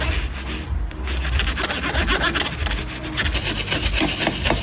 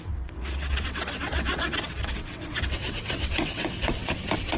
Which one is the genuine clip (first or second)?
first